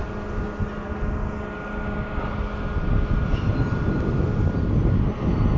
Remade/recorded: recorded